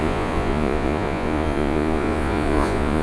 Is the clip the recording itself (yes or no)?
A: no